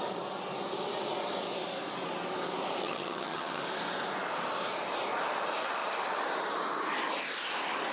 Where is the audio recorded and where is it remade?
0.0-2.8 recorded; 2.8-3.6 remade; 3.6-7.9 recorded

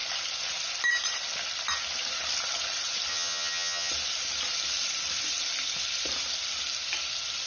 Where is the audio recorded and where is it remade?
0.0-3.1 recorded; 3.1-3.9 remade; 3.9-7.5 recorded

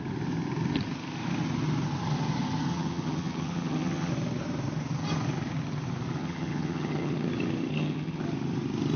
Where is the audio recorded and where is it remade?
0.0-2.7 recorded; 2.7-4.1 remade; 4.1-6.2 recorded; 6.2-7.3 remade; 7.3-7.7 recorded; 7.7-8.2 remade; 8.2-9.0 recorded

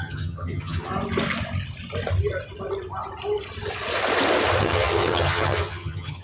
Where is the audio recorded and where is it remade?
0.0-0.9 remade; 0.9-4.6 recorded; 4.6-6.2 remade